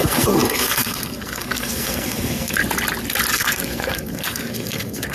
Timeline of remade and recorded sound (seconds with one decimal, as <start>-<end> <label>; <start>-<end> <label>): 0.0-2.6 remade; 2.6-3.3 recorded; 3.3-5.1 remade